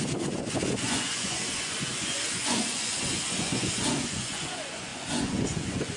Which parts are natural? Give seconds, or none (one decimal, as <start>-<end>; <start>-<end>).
none